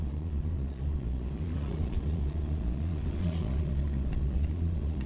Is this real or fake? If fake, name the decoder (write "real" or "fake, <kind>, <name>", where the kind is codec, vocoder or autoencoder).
fake, vocoder, Vocos